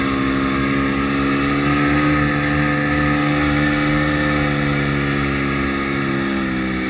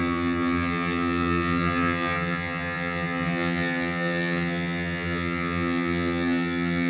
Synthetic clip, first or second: second